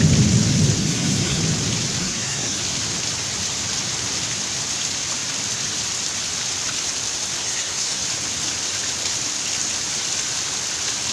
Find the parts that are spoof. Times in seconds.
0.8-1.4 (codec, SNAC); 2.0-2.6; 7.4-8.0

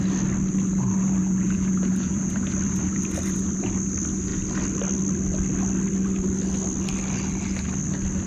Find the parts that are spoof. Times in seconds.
1.2-2.3 (vocoder, Vocos)

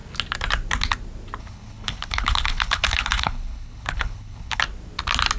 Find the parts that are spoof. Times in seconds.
1.4-4.6 (codec, HILCodec)

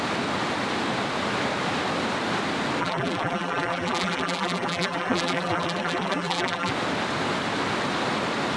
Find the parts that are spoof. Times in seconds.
2.8-6.7 (vocoder, BigVGAN v2)

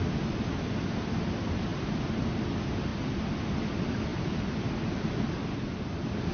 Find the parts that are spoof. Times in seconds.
1.7-2.3 (vocoder, BigVGAN v2); 2.9-3.4; 4.1-4.7

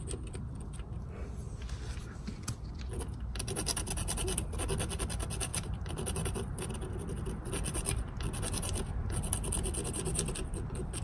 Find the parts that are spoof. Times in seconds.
5.5-6.6 (vocoder, BigVGAN v2)